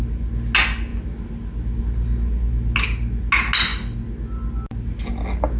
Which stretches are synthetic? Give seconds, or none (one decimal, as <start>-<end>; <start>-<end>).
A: none

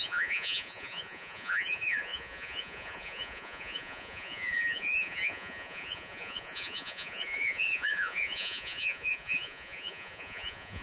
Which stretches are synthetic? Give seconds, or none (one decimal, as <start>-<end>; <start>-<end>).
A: 0.0-10.8

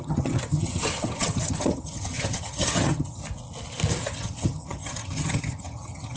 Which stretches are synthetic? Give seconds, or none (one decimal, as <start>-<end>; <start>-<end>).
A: 0.0-3.2; 4.0-6.2

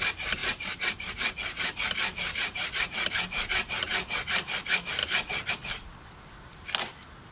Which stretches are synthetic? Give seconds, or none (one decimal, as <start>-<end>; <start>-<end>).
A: 0.4-1.1; 2.1-3.5

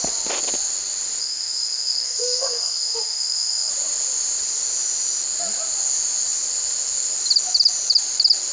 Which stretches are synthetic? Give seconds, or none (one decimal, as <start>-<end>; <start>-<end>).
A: 1.2-3.7

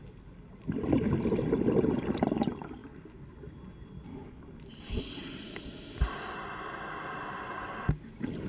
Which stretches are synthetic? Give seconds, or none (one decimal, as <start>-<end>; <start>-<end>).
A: none